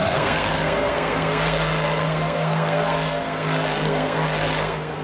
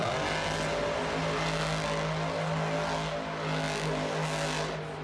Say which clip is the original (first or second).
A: second